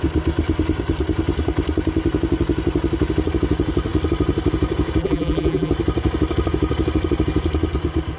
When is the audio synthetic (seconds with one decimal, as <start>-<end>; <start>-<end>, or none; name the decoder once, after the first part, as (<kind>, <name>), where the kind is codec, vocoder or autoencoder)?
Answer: 5.0-5.7 (vocoder, BigVGAN v2)